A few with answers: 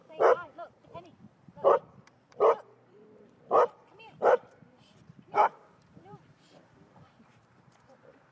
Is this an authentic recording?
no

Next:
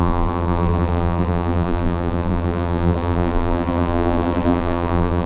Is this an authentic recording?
no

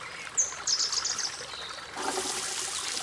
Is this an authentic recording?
yes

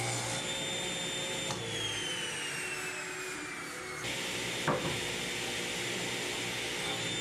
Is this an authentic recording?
yes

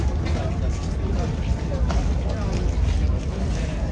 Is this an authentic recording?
yes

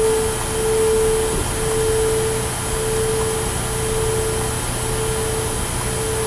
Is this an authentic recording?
yes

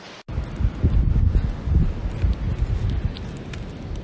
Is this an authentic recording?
yes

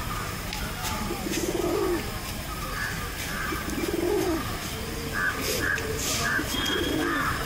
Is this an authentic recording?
yes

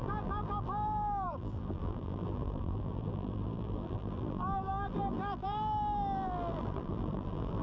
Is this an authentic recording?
no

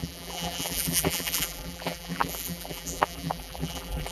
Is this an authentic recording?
no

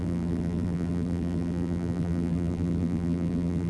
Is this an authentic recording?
no